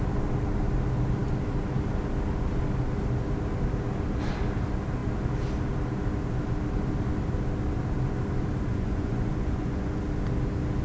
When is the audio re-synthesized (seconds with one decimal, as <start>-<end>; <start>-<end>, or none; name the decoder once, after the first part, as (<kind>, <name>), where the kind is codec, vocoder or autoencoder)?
8.7-10.0 (vocoder, Vocos)